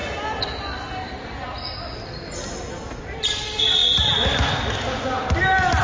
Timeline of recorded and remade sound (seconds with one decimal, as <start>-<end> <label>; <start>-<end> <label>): 0.0-3.0 recorded; 3.0-3.8 remade; 3.8-5.2 recorded; 5.2-5.8 remade